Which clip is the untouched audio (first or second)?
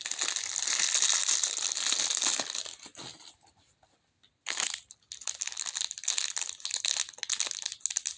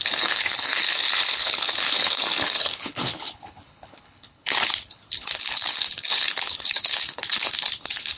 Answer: first